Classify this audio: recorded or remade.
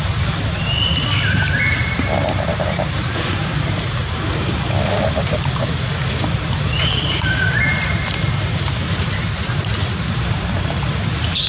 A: remade